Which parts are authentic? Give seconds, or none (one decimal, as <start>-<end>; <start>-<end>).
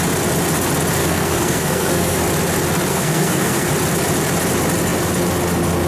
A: 0.0-1.0; 2.2-2.9; 3.7-5.9